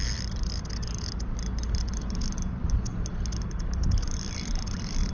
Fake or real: real